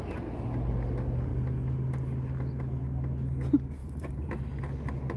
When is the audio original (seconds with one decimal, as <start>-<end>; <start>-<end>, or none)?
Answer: 0.0-3.8; 4.6-5.2